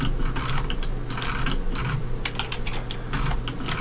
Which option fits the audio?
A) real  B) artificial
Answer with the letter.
A